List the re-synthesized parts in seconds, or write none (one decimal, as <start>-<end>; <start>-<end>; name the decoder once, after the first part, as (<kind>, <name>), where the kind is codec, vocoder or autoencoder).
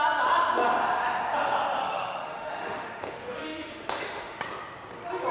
1.8-4.4 (autoencoder, DAC-VAE)